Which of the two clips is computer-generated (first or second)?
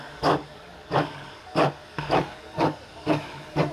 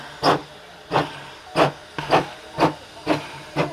first